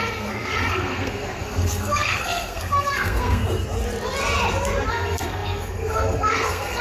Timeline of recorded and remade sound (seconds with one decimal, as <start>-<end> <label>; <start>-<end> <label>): 0.0-3.4 remade; 3.4-4.9 recorded; 4.9-6.8 remade